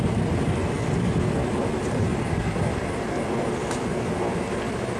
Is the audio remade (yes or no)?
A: no